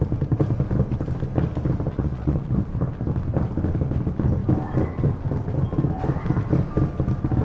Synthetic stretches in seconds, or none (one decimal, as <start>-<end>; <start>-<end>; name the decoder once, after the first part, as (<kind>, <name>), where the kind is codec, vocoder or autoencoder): 1.9-2.5 (vocoder, Vocos)

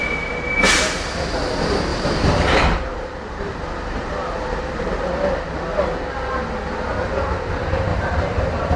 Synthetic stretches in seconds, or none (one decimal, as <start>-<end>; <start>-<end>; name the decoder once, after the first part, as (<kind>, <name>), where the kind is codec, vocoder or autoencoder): 1.9-5.1 (vocoder, BigVGAN v2); 7.9-8.8

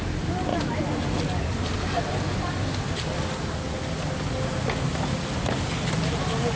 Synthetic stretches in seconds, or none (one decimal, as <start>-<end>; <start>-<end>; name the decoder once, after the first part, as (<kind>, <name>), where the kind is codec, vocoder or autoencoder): none

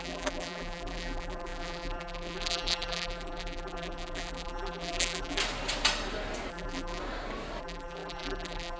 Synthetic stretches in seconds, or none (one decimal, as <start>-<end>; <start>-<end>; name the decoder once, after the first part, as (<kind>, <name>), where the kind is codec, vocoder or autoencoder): 0.0-5.4 (vocoder, BigVGAN v2); 6.5-7.0; 7.6-8.8

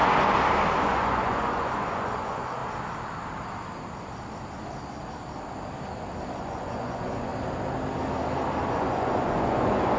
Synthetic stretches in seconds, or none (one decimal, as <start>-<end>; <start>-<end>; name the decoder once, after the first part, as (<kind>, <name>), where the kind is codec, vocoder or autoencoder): 0.8-2.6 (vocoder, Vocos); 6.4-7.3; 8.7-10.0

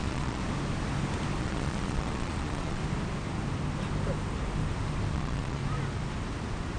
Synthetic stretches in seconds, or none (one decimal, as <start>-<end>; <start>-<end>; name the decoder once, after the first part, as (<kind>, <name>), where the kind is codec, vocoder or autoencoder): 0.0-0.4 (vocoder, Vocos); 1.4-2.8; 5.1-5.6

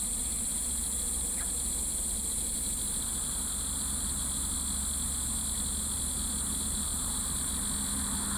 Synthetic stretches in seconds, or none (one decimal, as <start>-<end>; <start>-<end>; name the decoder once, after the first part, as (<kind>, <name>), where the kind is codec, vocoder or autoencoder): 6.9-7.4 (vocoder, BigVGAN v2)